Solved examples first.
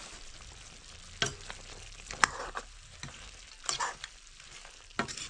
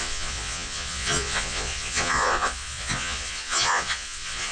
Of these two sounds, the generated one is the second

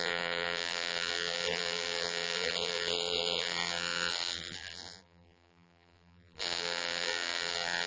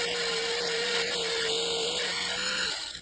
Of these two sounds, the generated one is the first